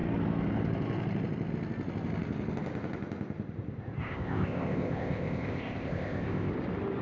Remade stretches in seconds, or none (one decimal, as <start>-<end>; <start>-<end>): 4.0-6.5